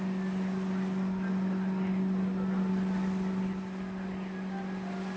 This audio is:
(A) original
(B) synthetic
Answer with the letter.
A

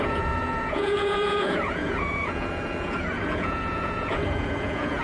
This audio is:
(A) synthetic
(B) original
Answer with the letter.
A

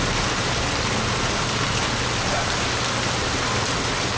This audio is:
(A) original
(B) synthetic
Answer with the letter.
A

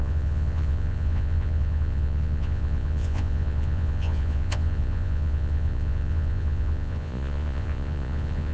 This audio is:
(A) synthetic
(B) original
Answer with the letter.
A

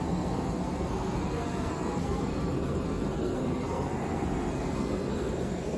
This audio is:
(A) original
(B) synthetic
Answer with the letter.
B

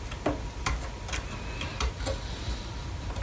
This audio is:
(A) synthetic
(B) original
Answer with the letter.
B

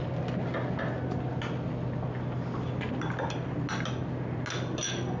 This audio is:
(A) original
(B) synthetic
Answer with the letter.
A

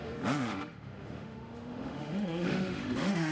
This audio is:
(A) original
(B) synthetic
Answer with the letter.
B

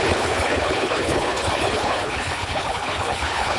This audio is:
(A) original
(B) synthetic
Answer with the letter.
B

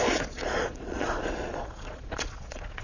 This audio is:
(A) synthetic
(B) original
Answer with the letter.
A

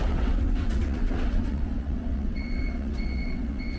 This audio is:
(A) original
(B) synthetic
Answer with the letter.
B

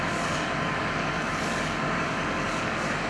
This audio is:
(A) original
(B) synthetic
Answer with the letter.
B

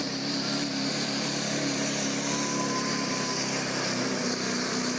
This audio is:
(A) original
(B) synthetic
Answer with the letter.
A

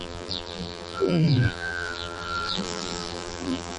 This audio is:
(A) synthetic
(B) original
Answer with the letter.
A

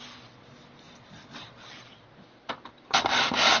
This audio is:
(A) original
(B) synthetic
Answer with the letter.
A